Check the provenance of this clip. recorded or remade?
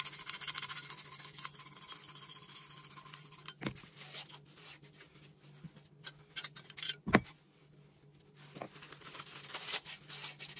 recorded